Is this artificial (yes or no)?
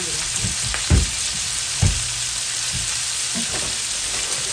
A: no